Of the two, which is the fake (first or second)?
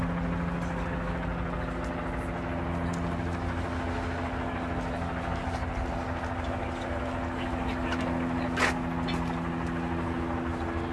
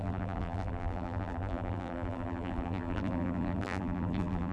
second